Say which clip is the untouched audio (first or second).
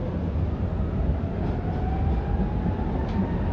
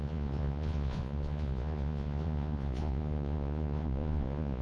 first